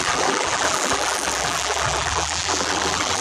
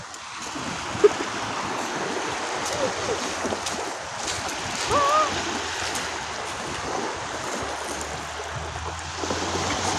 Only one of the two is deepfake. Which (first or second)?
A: first